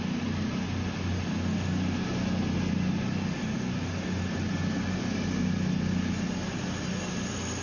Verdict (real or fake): real